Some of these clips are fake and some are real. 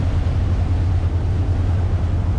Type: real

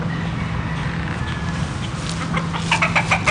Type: real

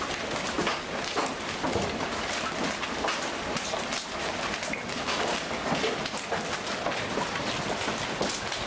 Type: real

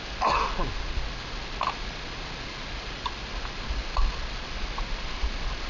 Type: real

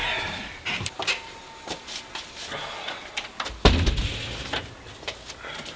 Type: real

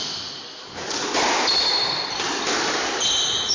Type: real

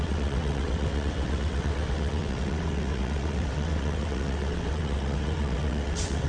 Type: fake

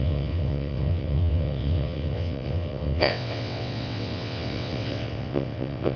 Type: fake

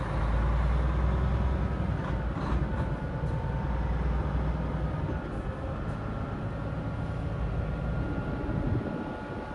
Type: real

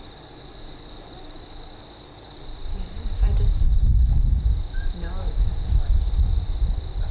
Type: real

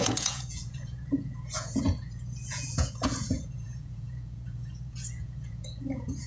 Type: fake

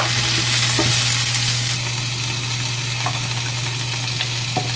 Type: real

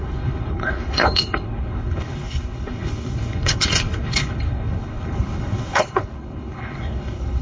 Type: fake